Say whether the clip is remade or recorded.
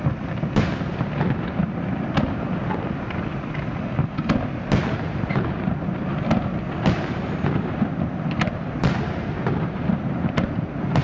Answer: recorded